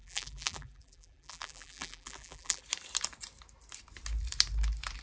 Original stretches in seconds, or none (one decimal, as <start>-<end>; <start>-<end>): 2.6-5.0